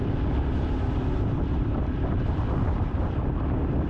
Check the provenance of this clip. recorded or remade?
remade